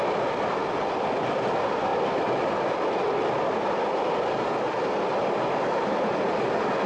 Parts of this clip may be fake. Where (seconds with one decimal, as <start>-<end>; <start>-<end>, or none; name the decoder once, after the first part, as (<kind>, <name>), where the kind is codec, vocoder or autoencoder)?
none